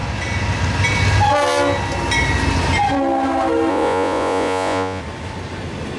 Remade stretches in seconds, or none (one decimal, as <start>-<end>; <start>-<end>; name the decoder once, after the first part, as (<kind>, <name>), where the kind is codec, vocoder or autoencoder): 3.7-5.0 (vocoder, Vocos)